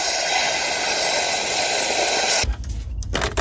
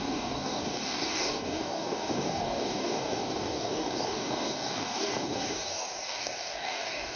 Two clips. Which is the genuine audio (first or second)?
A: first